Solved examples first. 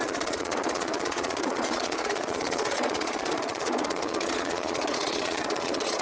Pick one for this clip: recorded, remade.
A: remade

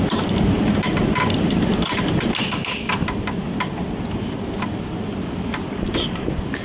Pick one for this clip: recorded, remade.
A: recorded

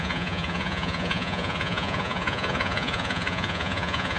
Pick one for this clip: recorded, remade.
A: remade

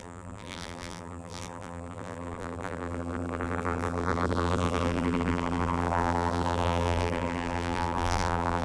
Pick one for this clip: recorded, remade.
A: remade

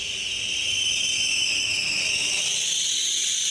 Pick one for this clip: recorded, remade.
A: recorded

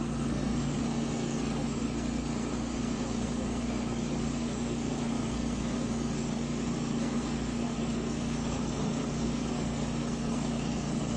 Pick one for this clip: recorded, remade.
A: remade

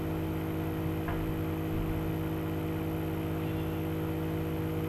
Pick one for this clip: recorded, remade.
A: recorded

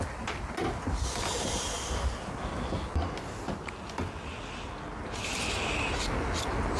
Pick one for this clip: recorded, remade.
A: recorded